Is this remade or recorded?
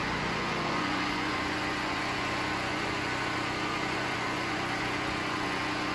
remade